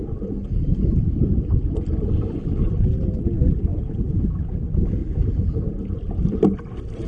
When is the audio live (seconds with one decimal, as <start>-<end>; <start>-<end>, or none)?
0.0-1.3; 3.2-3.7; 4.5-5.0; 6.2-7.1